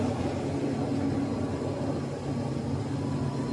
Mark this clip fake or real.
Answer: real